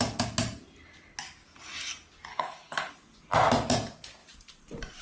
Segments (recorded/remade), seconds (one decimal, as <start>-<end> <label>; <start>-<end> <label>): 0.0-2.3 recorded; 2.3-2.9 remade; 2.9-5.0 recorded